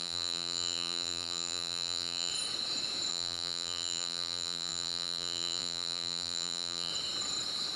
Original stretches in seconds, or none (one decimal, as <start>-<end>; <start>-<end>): 2.3-3.1; 6.9-7.8